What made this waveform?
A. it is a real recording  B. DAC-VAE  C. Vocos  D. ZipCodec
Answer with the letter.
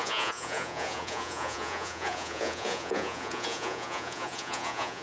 C